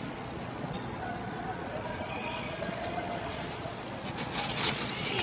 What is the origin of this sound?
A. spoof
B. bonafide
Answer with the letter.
A